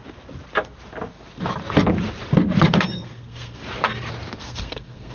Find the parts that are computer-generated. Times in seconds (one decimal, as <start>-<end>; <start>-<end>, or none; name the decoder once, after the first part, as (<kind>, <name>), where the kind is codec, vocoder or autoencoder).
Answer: 2.9-3.6 (codec, SNAC); 4.4-5.1